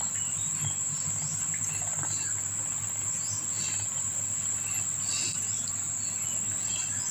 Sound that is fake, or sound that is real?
real